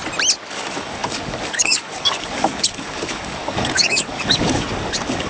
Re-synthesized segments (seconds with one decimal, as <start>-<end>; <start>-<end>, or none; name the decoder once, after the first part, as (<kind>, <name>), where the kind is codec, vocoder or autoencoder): 0.5-5.3 (codec, DAC)